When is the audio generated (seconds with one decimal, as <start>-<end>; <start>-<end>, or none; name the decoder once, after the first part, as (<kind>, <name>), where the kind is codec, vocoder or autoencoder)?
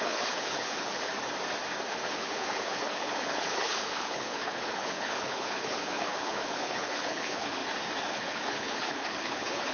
0.0-1.1 (codec, HILCodec); 1.9-7.6; 8.1-9.7